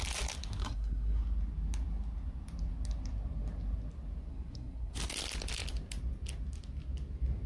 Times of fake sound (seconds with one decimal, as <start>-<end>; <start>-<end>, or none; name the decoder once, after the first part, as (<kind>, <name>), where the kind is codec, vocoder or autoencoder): 0.6-1.2 (codec, SNAC); 4.3-4.9